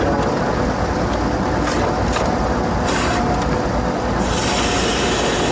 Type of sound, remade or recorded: recorded